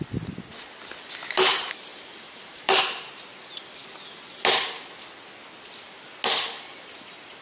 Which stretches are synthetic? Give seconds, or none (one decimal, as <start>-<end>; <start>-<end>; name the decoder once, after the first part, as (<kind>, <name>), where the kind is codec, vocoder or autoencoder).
1.9-2.8 (vocoder, BigVGAN v2)